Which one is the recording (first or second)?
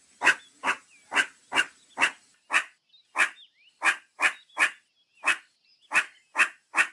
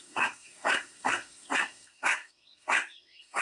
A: first